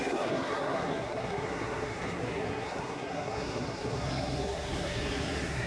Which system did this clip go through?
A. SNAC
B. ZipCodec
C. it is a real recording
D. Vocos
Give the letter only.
A